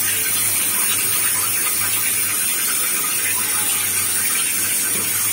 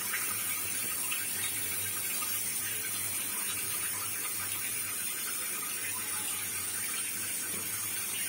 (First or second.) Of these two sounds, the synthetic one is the second